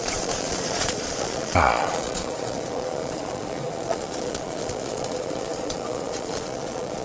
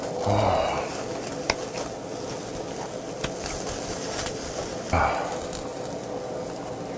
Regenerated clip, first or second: first